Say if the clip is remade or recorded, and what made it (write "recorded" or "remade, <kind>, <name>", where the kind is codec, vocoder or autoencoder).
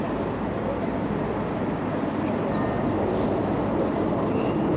recorded